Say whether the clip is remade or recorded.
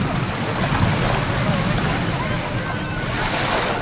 recorded